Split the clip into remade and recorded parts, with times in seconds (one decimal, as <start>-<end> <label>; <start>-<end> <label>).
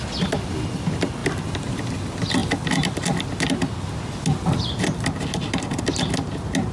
0.0-6.7 recorded